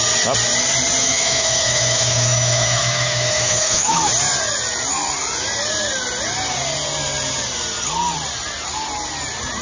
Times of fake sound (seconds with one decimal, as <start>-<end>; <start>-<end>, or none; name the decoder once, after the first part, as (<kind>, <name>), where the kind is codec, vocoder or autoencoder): 1.0-4.1 (autoencoder, DAC-VAE)